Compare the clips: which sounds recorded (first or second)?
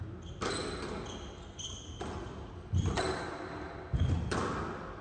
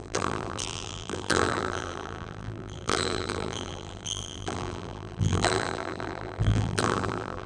first